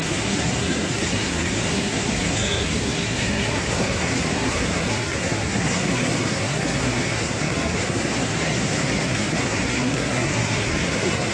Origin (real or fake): fake